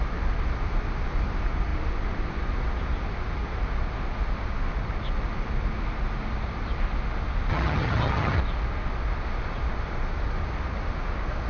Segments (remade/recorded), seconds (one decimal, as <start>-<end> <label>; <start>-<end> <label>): 0.0-7.5 recorded; 7.5-8.4 remade; 8.4-11.5 recorded